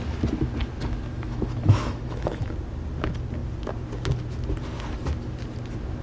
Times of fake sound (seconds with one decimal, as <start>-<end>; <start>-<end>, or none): 1.1-2.5

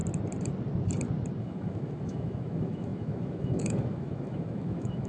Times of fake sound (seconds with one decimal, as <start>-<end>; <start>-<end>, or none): 1.4-5.1

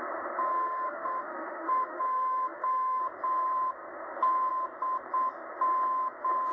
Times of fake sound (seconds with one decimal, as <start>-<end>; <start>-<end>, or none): 0.5-3.0